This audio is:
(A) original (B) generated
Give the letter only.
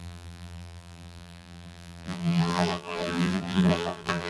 B